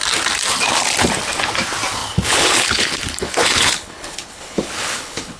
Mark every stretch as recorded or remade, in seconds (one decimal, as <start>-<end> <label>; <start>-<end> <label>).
0.0-2.0 recorded; 2.0-5.4 remade